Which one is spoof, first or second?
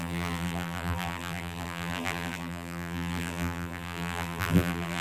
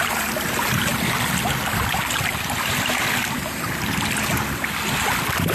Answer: first